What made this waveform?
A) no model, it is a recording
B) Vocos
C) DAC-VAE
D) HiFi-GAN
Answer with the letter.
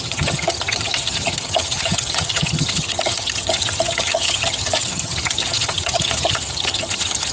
D